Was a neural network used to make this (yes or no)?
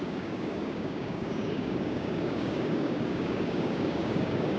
yes